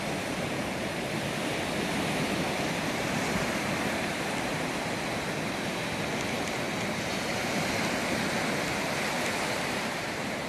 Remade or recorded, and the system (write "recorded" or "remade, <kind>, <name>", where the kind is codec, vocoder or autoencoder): recorded